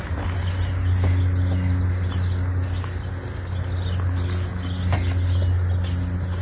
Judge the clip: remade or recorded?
recorded